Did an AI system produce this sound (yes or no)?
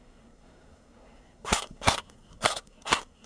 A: yes